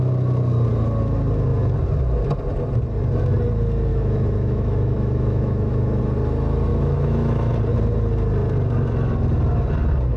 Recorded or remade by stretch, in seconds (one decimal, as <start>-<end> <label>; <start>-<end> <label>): 0.0-3.9 recorded; 3.9-6.0 remade; 6.0-6.7 recorded; 6.7-7.5 remade; 7.5-10.2 recorded

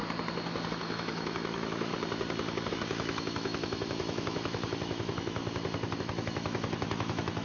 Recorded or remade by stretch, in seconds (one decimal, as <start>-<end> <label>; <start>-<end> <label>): 0.0-0.7 recorded; 0.7-1.9 remade; 1.9-2.7 recorded; 2.7-5.4 remade; 5.4-6.0 recorded; 6.0-7.4 remade

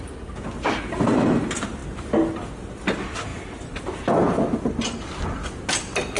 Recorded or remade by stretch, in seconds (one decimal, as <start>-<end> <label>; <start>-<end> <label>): 0.0-6.2 recorded

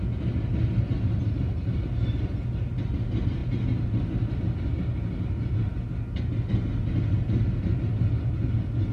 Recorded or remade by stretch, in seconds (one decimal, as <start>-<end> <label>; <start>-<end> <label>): 0.0-8.9 recorded

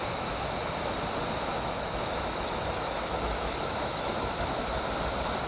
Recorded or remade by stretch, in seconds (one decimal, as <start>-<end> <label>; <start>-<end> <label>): 0.0-1.5 recorded; 1.5-4.8 remade; 4.8-5.5 recorded

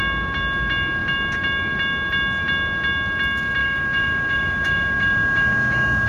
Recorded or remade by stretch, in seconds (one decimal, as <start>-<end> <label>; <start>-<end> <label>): 0.0-3.6 recorded; 3.6-6.1 remade

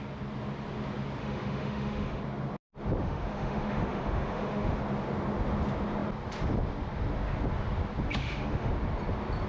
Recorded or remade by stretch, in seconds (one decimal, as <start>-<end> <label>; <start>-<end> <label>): 0.0-1.2 recorded; 1.2-2.2 remade; 2.2-3.0 recorded; 3.0-4.8 remade; 4.8-8.2 recorded; 8.2-8.7 remade; 8.7-9.5 recorded

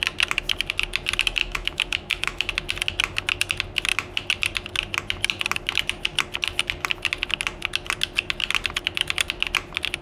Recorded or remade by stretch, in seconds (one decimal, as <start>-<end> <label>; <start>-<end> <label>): 0.0-1.4 recorded; 1.4-2.5 remade; 2.5-10.0 recorded